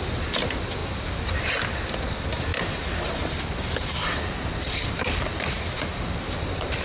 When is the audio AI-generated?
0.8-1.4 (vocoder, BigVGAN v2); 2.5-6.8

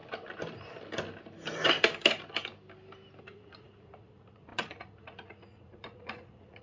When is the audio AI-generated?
3.2-6.6 (vocoder, Vocos)

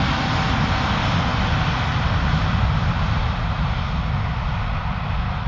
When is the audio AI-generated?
none

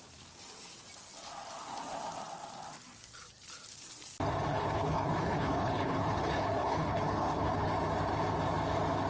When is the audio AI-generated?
4.5-7.7 (codec, HILCodec)

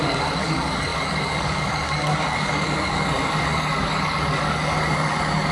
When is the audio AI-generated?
0.0-5.5 (codec, DAC)

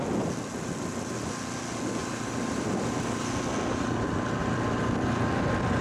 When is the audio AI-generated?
2.0-3.3 (vocoder, BigVGAN v2); 4.4-5.3